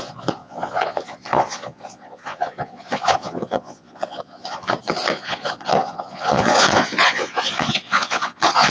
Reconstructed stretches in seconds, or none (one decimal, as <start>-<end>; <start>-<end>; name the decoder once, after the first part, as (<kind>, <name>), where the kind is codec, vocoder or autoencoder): 0.0-8.7 (vocoder, Vocos)